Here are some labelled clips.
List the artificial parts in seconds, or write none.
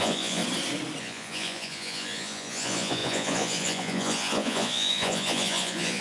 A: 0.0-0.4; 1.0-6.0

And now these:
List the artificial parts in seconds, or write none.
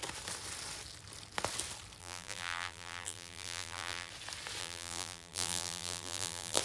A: 2.0-4.1; 4.6-6.6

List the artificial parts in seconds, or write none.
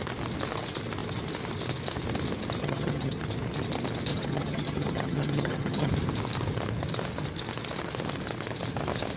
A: 2.6-3.2; 4.1-5.9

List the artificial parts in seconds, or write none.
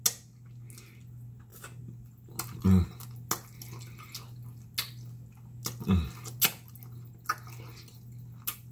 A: none